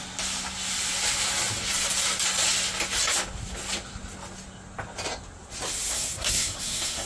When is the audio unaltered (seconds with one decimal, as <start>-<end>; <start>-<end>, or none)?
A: 0.0-5.9